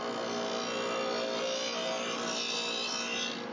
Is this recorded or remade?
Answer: recorded